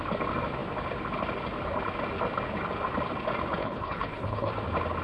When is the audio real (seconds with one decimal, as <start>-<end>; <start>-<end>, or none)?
0.0-3.6; 4.5-5.0